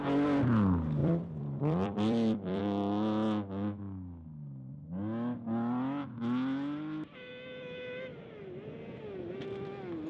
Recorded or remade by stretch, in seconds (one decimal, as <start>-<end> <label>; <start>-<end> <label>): 0.0-1.0 recorded; 1.0-2.6 remade; 2.6-8.1 recorded; 8.1-9.0 remade; 9.0-10.1 recorded